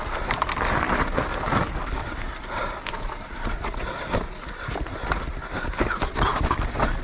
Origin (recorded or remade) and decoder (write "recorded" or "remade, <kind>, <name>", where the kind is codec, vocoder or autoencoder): recorded